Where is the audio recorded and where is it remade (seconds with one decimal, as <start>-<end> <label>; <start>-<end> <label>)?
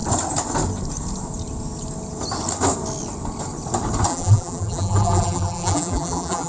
0.0-4.1 recorded; 4.1-6.5 remade